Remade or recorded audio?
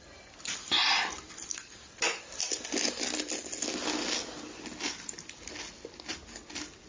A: recorded